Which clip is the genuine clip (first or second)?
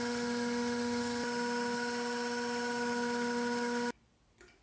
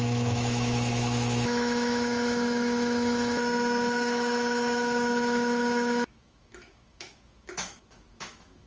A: first